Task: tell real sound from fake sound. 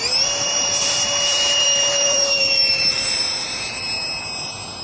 fake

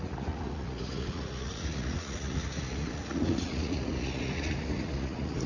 fake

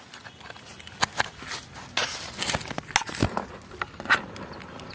real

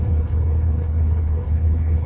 fake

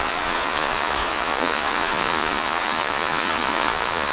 fake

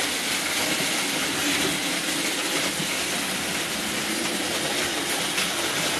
real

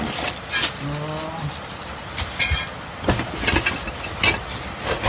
real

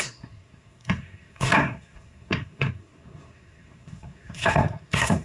fake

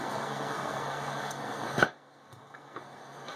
fake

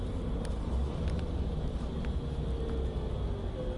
real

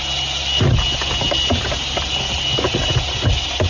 real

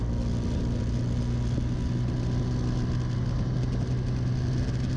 real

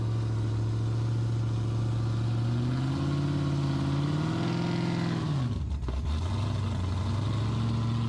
real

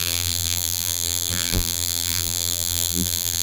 fake